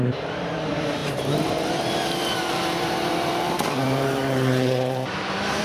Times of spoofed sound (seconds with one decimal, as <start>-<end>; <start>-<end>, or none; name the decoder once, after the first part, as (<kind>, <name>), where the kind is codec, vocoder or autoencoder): 0.0-5.6 (vocoder, BigVGAN v2)